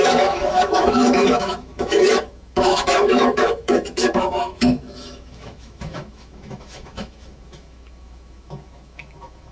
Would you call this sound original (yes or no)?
no